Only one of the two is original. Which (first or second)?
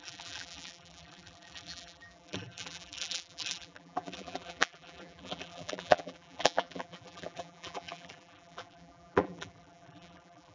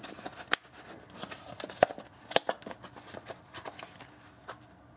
second